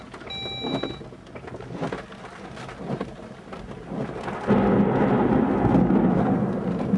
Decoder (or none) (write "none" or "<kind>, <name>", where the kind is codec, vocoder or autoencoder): none